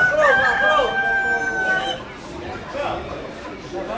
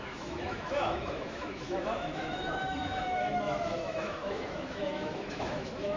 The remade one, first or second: second